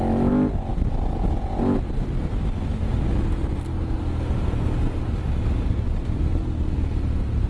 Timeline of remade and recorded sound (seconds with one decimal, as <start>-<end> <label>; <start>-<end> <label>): 0.0-7.5 recorded